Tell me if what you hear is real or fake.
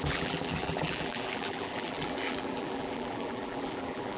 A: fake